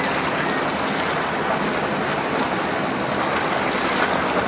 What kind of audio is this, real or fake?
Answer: real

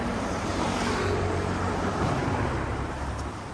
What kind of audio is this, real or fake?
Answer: fake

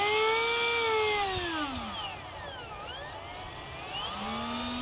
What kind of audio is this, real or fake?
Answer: real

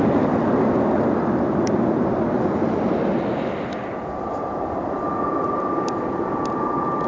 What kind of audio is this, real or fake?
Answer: real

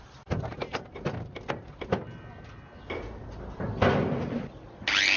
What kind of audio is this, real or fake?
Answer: real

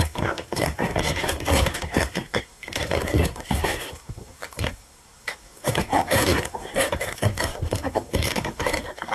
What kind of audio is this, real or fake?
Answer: fake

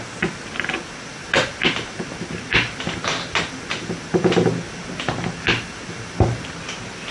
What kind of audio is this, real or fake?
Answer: real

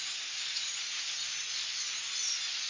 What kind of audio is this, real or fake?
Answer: real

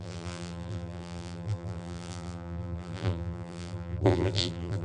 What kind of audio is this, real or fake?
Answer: fake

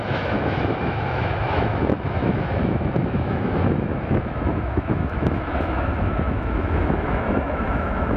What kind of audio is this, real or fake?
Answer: fake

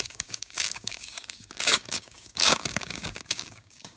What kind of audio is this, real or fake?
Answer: fake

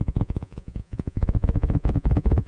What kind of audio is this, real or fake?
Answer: fake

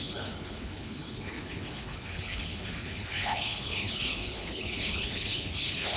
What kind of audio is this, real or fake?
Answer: fake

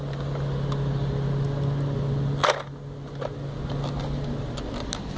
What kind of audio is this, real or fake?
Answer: real